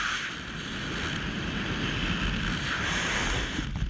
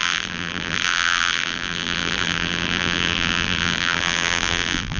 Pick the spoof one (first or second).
second